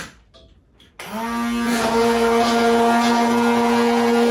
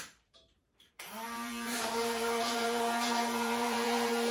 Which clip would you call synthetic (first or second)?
second